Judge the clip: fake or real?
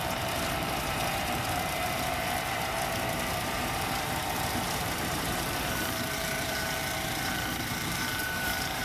fake